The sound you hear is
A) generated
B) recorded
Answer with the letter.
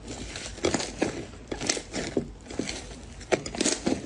B